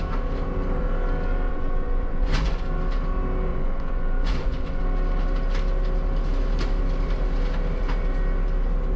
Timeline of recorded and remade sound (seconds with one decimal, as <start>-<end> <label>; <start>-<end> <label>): 0.0-1.5 recorded; 1.5-2.7 remade; 2.7-3.5 recorded; 3.5-4.8 remade; 4.8-9.0 recorded